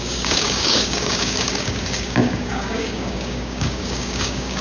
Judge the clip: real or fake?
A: fake